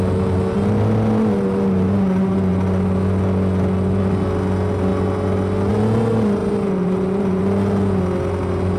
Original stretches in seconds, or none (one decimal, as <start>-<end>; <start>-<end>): 0.0-6.4; 7.4-8.8